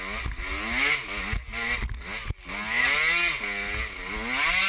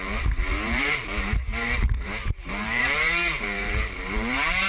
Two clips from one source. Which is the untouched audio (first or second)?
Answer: first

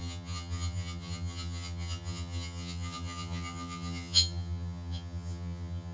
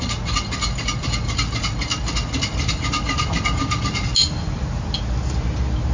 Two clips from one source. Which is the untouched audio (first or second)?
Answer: second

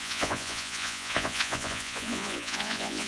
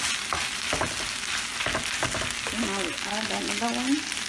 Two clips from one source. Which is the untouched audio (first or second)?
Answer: second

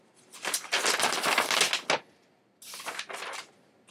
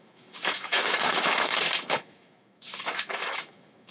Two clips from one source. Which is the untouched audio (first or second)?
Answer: first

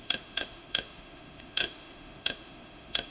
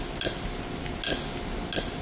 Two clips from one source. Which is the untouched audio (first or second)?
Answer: second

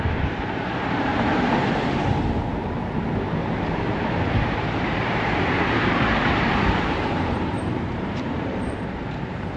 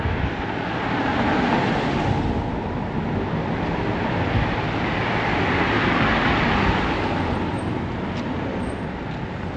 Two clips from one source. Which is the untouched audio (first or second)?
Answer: second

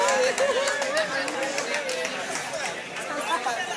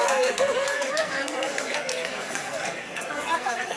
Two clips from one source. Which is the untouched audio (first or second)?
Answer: first